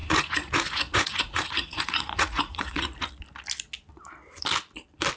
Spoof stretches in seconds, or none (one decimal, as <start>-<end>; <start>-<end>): 0.0-3.1